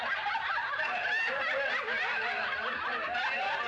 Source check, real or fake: real